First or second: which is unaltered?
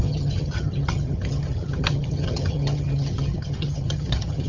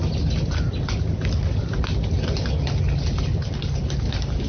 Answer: second